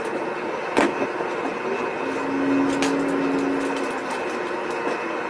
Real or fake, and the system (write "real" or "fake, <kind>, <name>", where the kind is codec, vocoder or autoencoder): real